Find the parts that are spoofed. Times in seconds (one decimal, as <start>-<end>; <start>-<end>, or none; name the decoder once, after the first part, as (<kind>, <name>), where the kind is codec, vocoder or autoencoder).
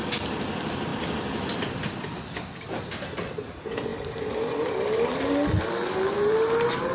none